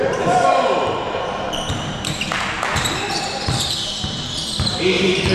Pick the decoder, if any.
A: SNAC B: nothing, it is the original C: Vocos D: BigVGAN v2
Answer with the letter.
D